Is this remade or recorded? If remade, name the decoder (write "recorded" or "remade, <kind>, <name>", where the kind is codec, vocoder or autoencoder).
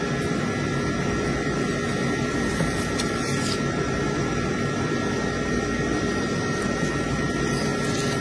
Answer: remade, vocoder, BigVGAN v2